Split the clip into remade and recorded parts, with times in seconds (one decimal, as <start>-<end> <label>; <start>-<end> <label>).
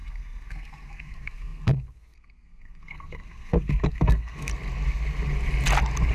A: 0.0-4.5 remade; 4.5-6.1 recorded